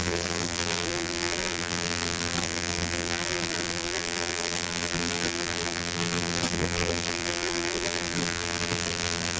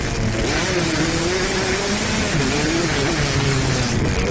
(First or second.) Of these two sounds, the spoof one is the first